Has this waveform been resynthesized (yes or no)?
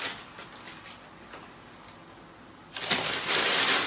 no